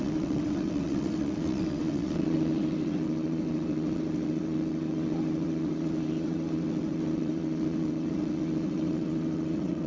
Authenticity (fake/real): fake